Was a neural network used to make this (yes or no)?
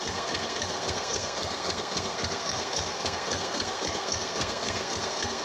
yes